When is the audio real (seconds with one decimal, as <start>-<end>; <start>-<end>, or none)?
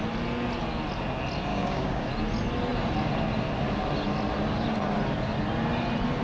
0.0-1.5; 2.1-6.2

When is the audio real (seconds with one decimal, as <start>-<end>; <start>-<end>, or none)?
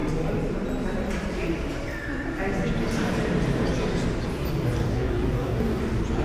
0.0-4.8; 5.8-6.2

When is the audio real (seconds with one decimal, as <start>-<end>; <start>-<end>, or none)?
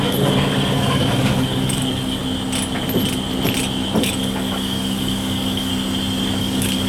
2.2-4.0; 5.7-6.4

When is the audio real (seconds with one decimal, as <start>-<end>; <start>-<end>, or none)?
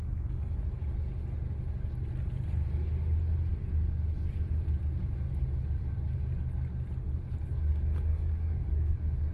0.6-8.1